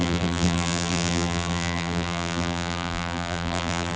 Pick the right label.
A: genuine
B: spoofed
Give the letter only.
B